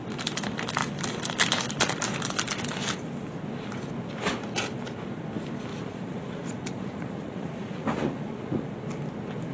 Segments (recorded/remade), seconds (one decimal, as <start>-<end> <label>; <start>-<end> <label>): 0.0-5.7 recorded; 5.7-8.7 remade; 8.7-9.5 recorded